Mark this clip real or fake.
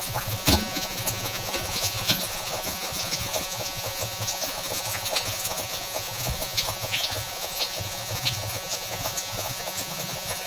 fake